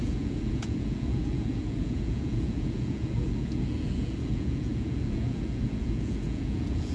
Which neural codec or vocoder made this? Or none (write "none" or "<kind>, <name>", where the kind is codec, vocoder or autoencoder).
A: vocoder, Vocos